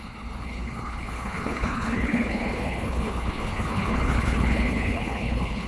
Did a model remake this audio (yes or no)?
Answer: yes